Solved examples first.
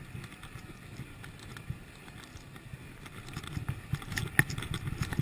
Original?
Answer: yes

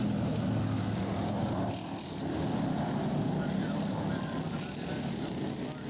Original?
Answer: yes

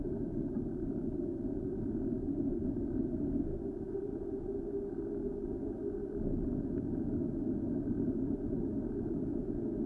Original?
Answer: yes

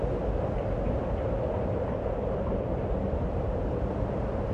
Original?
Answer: yes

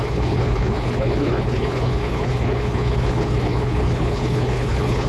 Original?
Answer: no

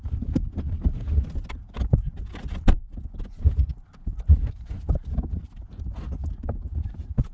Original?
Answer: yes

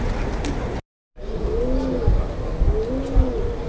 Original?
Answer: yes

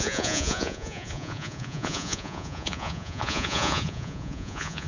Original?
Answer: no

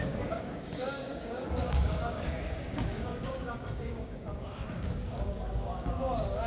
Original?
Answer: no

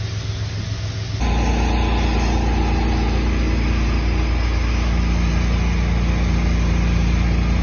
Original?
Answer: yes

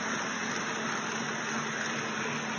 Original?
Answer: yes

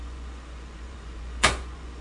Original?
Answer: no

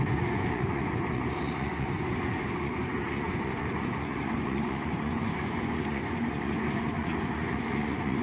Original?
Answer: no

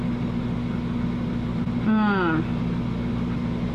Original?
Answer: yes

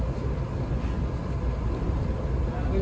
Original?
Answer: yes